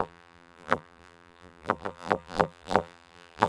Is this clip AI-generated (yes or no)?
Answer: yes